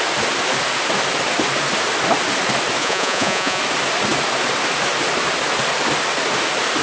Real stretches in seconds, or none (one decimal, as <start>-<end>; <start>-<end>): 0.0-2.8; 3.6-6.8